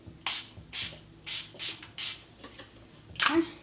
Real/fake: real